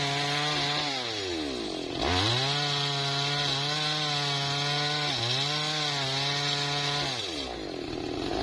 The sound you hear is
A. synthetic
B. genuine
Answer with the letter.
B